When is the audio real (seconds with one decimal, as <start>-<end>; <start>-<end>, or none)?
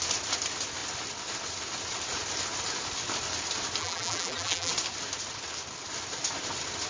0.0-3.8; 4.7-6.9